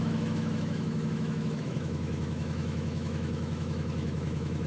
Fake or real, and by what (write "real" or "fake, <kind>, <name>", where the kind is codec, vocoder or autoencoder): fake, autoencoder, DAC-VAE